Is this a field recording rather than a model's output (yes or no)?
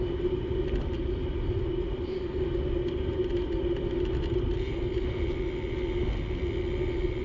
yes